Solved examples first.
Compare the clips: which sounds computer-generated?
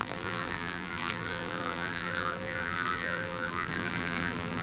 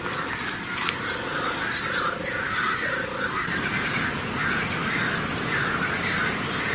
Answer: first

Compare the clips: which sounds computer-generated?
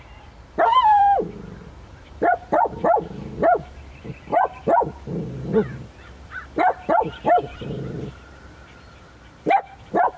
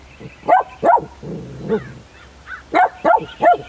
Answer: first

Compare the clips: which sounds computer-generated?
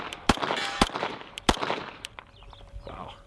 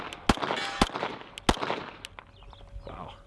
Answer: first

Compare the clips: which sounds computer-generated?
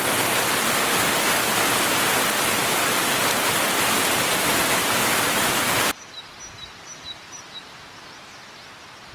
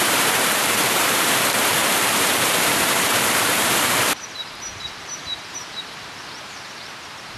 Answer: second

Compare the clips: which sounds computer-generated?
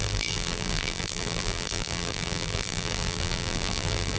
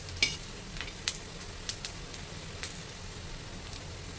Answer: first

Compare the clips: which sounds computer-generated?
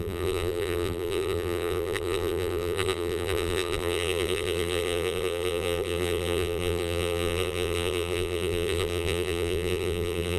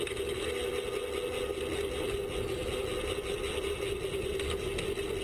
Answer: first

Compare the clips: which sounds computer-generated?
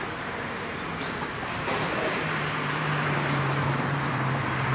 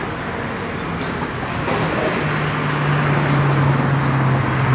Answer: first